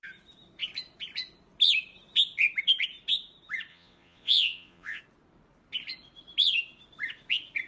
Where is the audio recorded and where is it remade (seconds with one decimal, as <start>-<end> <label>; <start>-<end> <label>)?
0.0-3.7 recorded; 3.7-5.0 remade; 5.0-7.7 recorded

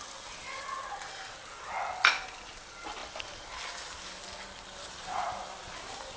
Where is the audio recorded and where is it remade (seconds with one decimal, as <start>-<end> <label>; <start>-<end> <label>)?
0.0-6.2 recorded

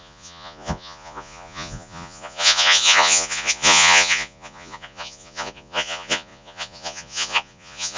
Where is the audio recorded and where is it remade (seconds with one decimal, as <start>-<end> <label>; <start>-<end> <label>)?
0.0-8.0 remade

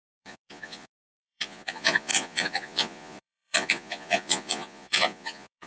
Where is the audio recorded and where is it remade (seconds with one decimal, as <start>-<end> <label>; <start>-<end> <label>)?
0.0-5.7 remade

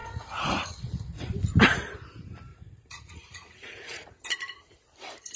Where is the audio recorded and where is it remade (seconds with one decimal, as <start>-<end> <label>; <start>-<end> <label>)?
0.0-1.3 remade; 1.3-2.5 recorded; 2.5-4.2 remade; 4.2-5.4 recorded

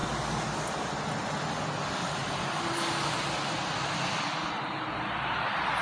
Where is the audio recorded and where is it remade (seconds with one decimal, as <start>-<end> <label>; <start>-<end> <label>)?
0.0-5.8 recorded